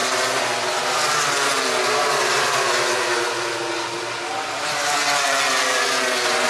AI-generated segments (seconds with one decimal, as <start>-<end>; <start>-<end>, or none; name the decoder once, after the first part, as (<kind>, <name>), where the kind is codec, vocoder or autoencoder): none